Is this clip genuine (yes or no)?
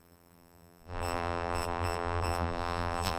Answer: no